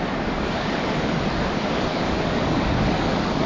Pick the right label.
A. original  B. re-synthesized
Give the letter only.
B